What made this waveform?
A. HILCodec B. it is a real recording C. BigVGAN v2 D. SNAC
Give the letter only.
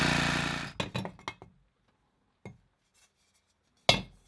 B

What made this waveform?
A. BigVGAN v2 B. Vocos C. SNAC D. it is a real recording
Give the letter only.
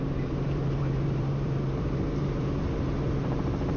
A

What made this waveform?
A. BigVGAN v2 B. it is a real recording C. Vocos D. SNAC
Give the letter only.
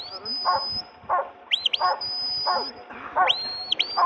B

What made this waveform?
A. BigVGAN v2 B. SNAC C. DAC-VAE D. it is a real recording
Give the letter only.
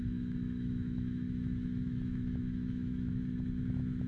C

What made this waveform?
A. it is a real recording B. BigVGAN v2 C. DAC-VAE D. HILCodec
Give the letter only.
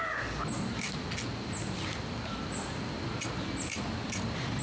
A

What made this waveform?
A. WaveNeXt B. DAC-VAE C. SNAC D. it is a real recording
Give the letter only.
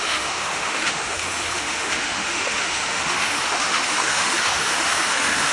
B